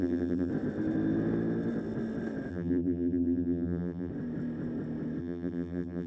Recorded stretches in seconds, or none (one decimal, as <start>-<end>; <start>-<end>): 0.5-2.5; 4.1-5.2

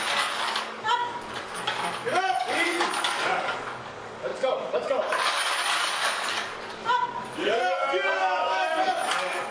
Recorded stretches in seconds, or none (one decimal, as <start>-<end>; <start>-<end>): none

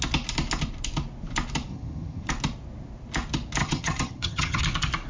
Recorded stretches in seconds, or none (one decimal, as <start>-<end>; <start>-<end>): 0.0-1.7; 2.3-3.6; 4.6-5.1

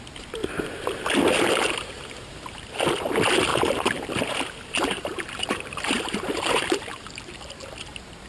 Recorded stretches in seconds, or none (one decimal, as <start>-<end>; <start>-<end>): 0.0-0.4; 2.8-3.5; 7.4-8.3

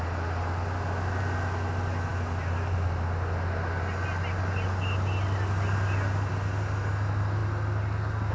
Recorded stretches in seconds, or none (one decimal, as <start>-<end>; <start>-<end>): 0.0-8.3